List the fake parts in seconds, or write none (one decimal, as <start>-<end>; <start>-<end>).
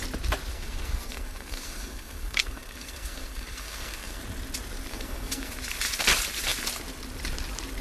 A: 0.5-4.2; 4.9-5.5